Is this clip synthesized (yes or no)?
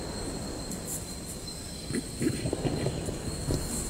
no